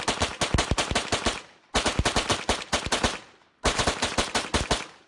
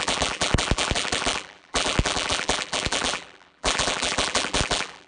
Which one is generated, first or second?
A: second